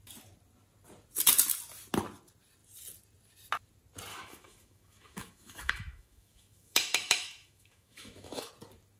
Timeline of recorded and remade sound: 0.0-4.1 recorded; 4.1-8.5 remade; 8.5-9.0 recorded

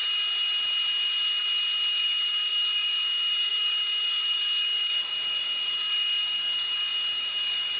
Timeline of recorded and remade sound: 0.0-1.9 recorded; 1.9-7.8 remade

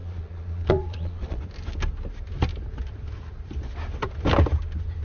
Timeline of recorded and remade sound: 0.0-1.4 remade; 1.4-5.0 recorded

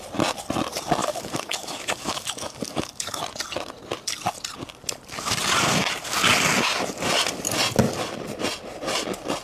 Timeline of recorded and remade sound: 0.0-1.0 recorded; 1.0-3.2 remade; 3.2-9.4 recorded

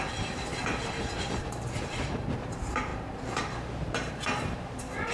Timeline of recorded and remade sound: 0.0-0.5 remade; 0.5-1.4 recorded; 1.4-5.1 remade

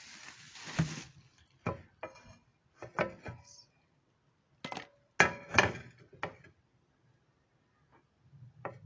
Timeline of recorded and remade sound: 0.0-8.9 recorded

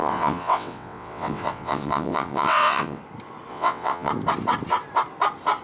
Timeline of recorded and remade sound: 0.0-3.0 remade; 3.0-3.5 recorded; 3.5-4.1 remade; 4.1-5.6 recorded